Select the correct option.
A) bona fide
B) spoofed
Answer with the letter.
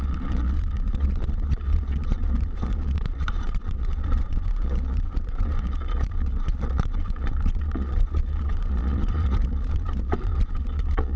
B